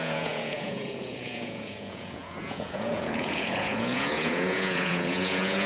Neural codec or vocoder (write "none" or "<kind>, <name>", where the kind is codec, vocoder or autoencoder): vocoder, Vocos